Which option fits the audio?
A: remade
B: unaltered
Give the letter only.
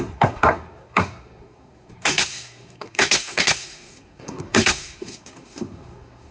A